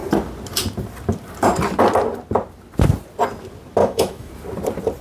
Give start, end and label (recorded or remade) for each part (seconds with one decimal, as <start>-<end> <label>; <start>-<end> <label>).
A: 0.0-3.8 recorded; 3.8-4.3 remade; 4.3-5.0 recorded